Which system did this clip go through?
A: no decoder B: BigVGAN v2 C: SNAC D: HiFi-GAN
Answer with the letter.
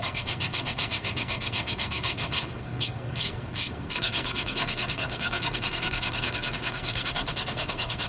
C